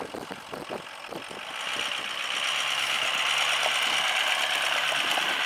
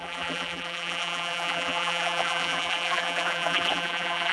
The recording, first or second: first